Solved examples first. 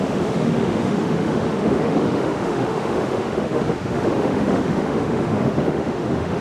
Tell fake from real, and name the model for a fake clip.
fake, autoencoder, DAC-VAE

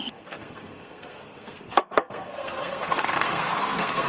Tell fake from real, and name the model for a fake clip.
fake, codec, SNAC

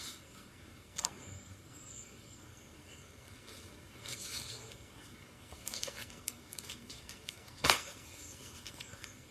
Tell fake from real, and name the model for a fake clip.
fake, codec, SNAC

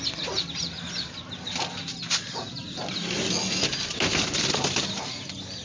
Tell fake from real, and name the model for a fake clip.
real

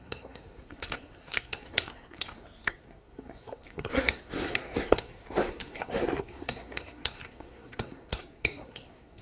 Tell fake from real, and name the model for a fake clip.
fake, codec, SNAC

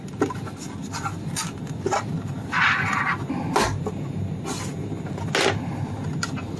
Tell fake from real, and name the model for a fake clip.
real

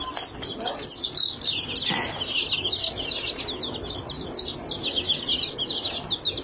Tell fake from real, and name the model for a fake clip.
real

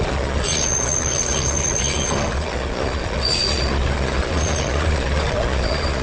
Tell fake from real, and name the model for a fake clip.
fake, vocoder, Vocos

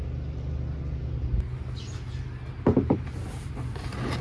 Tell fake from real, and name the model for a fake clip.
real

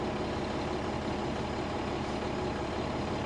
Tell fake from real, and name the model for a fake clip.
real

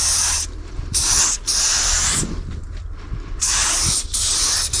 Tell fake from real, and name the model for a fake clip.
real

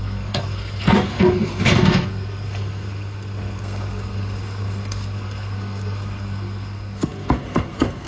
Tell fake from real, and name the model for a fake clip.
fake, codec, SNAC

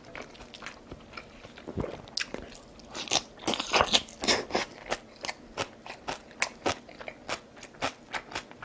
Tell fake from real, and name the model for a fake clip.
real